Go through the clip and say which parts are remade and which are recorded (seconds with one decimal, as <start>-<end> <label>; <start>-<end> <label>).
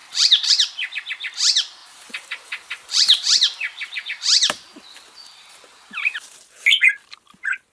0.0-0.5 remade; 0.5-1.8 recorded; 1.8-5.5 remade; 5.5-7.7 recorded